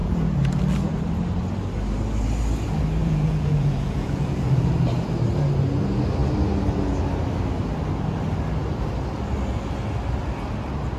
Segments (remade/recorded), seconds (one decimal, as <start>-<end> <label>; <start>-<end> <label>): 0.0-0.5 remade; 0.5-3.0 recorded; 3.0-4.7 remade; 4.7-11.0 recorded